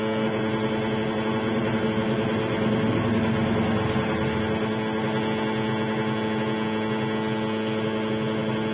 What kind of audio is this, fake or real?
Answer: real